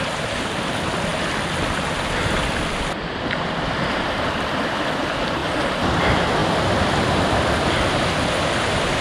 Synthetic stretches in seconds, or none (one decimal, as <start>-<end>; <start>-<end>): 0.0-1.1; 2.3-5.4; 6.0-9.0